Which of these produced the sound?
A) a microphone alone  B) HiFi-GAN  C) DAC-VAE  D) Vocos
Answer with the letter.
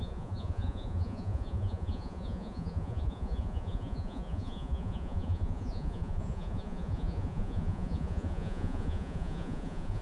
D